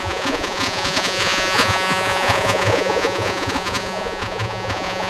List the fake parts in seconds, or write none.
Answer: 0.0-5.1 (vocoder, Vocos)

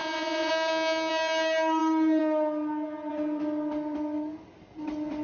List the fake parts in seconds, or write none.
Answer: 0.0-0.5 (vocoder, Vocos)

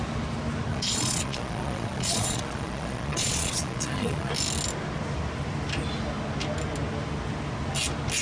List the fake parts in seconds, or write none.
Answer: 0.7-4.3 (vocoder, Vocos)

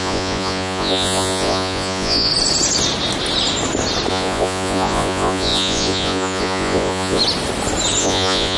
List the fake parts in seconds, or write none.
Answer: 0.0-2.3 (vocoder, Vocos); 4.1-7.2; 8.0-8.6

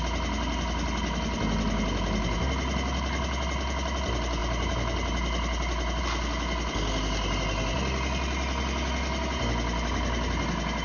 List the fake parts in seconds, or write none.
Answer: none

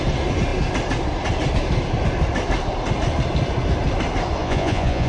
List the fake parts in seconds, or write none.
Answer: 4.4-5.1 (vocoder, Vocos)